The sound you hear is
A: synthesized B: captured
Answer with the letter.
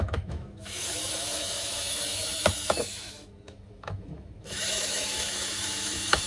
A